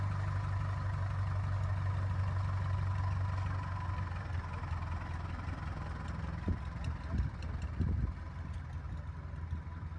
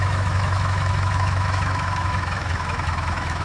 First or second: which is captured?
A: first